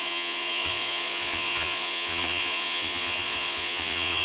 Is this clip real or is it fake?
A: fake